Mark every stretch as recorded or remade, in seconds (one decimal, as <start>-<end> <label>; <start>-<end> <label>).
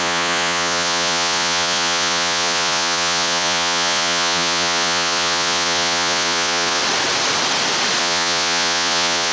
0.0-6.8 remade; 6.8-8.0 recorded; 8.0-9.3 remade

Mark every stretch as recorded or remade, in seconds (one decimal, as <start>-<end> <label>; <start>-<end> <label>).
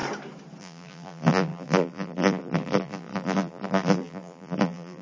0.0-0.6 recorded; 0.6-5.0 remade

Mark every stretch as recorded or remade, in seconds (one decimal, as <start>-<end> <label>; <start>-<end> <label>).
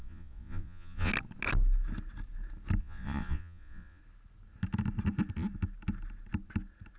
0.0-1.1 remade; 1.1-2.8 recorded; 2.8-4.0 remade; 4.0-7.0 recorded